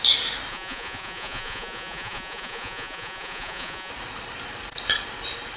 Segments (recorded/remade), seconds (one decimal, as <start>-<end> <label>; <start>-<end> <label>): 0.0-0.5 recorded; 0.5-3.9 remade; 3.9-5.6 recorded